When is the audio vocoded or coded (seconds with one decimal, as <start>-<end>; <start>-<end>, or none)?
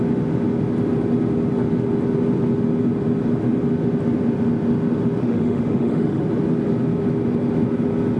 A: 5.2-6.2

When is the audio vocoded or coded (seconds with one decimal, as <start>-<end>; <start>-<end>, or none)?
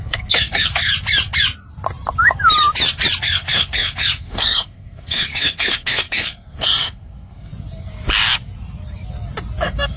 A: 0.0-0.9; 3.2-7.5; 9.6-10.0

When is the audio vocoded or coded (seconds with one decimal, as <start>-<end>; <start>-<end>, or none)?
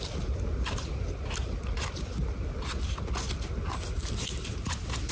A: none